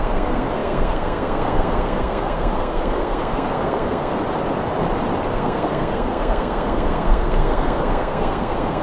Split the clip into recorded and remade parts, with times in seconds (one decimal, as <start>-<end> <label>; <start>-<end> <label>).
0.0-4.1 remade; 4.1-5.3 recorded; 5.3-8.8 remade